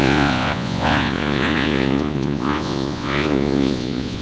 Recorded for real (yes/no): no